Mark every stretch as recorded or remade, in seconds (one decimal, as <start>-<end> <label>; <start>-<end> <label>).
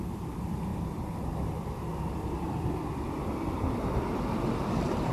0.0-0.7 recorded; 0.7-3.8 remade; 3.8-5.1 recorded